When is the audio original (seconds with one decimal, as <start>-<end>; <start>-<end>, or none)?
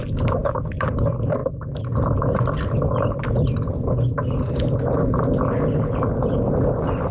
0.0-0.4; 0.9-7.1